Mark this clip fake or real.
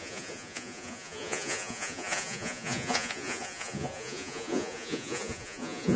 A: fake